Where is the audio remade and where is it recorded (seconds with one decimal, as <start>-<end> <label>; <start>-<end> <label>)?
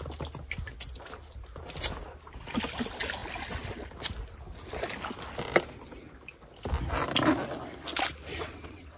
0.0-8.3 recorded; 8.3-9.0 remade